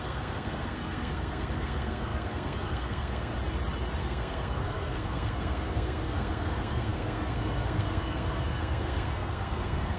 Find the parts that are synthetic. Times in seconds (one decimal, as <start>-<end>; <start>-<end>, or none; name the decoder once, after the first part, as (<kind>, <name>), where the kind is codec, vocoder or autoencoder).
0.0-3.3 (codec, SNAC); 4.0-10.0